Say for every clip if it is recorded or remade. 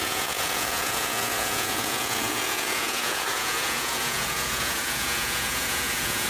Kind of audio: remade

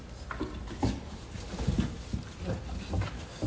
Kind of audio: recorded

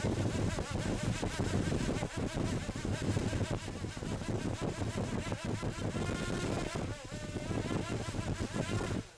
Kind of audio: recorded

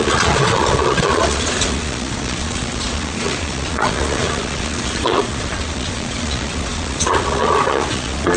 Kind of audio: remade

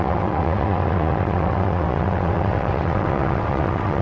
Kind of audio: remade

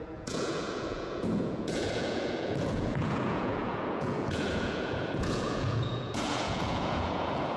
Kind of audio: remade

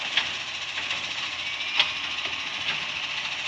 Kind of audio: recorded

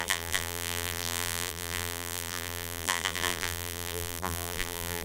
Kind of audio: remade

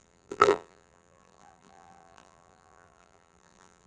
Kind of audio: remade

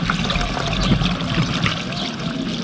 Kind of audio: recorded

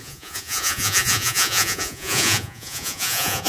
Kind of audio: remade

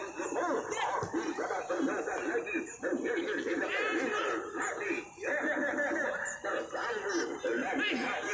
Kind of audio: remade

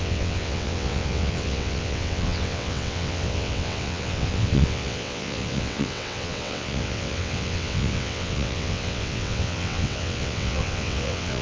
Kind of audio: remade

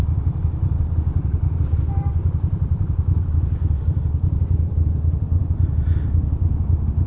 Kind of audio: remade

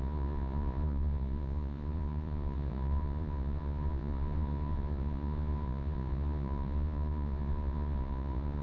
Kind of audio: remade